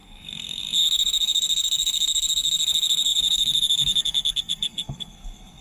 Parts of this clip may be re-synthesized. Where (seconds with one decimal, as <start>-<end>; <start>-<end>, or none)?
0.0-5.6